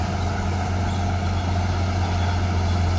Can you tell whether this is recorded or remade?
recorded